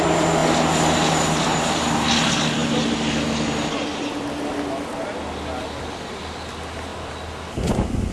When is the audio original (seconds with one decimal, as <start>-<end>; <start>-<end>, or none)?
0.0-8.1